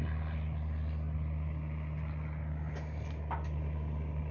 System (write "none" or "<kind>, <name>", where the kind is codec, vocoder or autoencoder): none